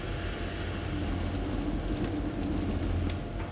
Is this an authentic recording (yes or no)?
yes